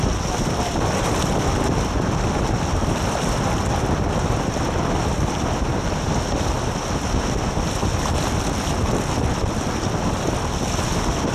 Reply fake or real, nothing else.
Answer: real